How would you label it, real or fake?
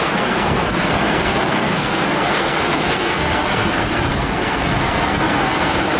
fake